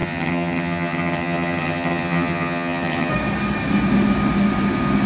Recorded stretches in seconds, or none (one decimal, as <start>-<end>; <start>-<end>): 3.1-5.1